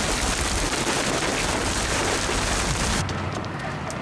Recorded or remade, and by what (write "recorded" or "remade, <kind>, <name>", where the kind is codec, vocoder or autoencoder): recorded